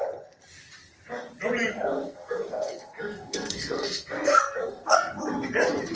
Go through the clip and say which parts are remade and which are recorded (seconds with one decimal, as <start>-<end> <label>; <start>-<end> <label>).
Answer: 0.0-1.7 recorded; 1.7-5.2 remade; 5.2-6.0 recorded